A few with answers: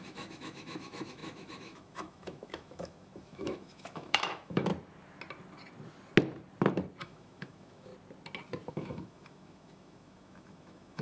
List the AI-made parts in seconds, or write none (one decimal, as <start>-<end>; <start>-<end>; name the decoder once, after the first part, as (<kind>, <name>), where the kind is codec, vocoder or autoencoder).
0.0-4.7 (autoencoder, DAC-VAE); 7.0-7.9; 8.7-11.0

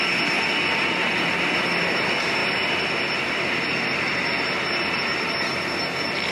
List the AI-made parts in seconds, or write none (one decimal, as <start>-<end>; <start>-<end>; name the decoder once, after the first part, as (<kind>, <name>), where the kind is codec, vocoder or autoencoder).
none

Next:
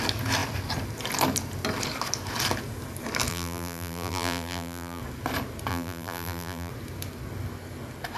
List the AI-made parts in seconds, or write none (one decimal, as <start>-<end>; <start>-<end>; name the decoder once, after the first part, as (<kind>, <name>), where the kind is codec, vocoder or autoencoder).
3.3-5.0 (vocoder, BigVGAN v2); 5.7-6.7

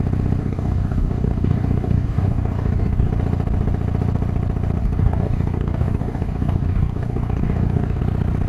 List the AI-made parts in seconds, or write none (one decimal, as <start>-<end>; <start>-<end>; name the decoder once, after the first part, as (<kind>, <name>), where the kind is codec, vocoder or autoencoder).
0.4-3.1 (codec, DAC); 4.8-8.0

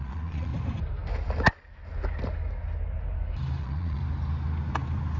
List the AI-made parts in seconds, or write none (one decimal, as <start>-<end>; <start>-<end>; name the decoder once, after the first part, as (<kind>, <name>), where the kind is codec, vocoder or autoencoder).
0.0-0.5 (vocoder, Vocos); 3.6-4.0